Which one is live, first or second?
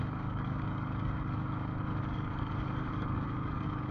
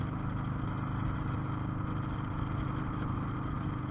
second